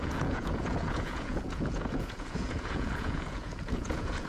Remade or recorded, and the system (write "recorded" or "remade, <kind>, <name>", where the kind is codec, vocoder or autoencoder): remade, vocoder, Vocos